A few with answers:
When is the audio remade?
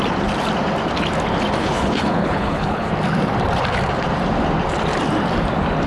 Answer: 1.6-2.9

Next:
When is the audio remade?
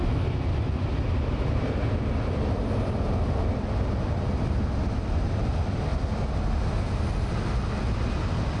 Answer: none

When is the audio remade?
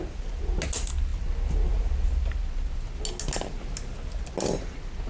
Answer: none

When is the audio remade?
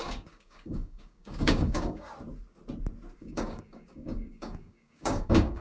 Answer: 0.0-2.1; 3.2-5.6